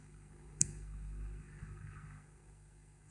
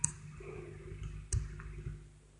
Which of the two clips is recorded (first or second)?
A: second